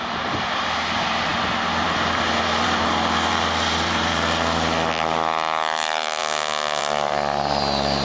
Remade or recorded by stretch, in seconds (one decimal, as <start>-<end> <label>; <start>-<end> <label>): 0.0-1.3 remade; 1.3-1.8 recorded; 1.8-6.2 remade; 6.2-6.8 recorded; 6.8-8.0 remade